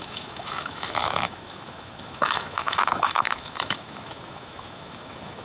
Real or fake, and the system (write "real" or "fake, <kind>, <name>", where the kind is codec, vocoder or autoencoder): fake, autoencoder, DAC-VAE